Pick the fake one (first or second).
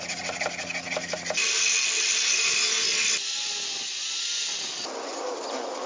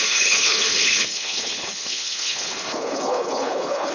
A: second